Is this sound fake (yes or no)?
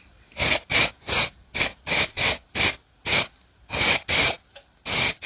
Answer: no